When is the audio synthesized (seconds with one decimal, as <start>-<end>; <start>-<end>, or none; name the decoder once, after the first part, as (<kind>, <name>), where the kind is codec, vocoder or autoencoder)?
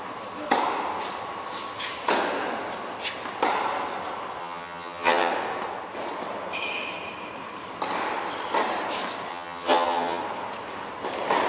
4.4-5.3 (vocoder, HiFi-GAN); 9.3-10.2